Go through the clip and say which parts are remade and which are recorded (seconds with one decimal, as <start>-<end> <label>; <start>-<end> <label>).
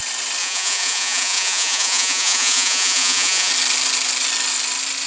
0.0-0.4 recorded; 0.4-3.5 remade; 3.5-5.1 recorded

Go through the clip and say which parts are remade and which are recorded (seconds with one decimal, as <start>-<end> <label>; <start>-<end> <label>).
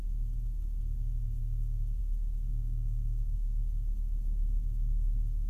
0.0-2.5 recorded; 2.5-3.6 remade; 3.6-5.5 recorded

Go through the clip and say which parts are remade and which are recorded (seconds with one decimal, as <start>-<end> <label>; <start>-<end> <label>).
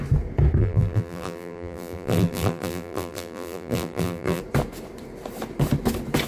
0.0-0.6 recorded; 0.6-4.4 remade; 4.4-6.3 recorded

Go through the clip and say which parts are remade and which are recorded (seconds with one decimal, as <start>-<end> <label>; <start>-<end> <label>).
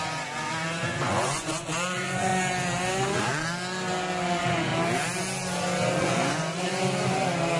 0.0-2.3 remade; 2.3-4.3 recorded; 4.3-4.7 remade; 4.7-6.0 recorded; 6.0-6.8 remade; 6.8-7.6 recorded